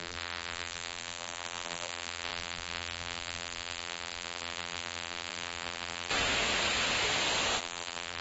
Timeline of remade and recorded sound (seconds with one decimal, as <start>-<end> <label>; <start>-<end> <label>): 0.0-6.1 remade; 6.1-7.6 recorded; 7.6-8.2 remade